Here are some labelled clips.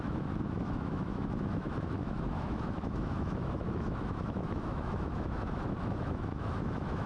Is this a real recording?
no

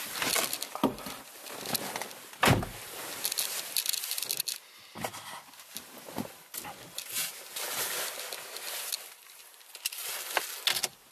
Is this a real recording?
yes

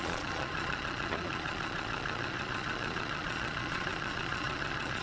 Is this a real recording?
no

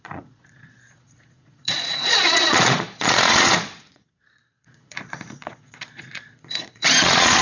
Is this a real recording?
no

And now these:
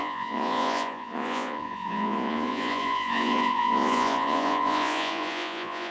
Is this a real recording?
no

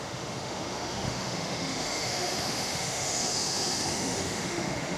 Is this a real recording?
no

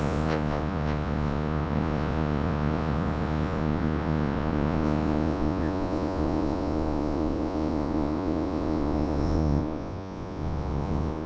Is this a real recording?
no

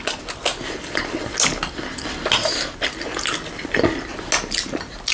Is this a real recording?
yes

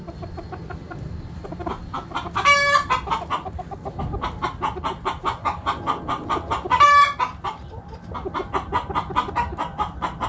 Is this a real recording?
yes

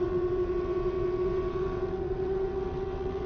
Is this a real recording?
no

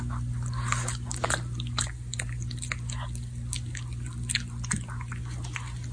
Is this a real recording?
yes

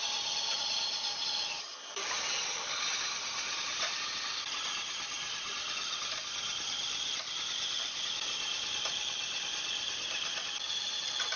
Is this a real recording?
yes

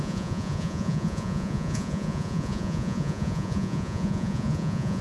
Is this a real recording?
no